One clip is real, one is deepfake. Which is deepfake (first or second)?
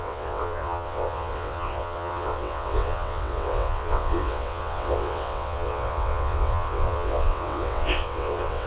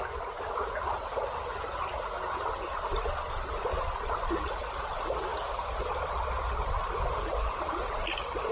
first